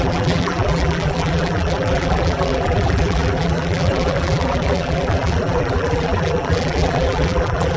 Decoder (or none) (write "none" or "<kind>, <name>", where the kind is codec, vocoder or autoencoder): vocoder, BigVGAN v2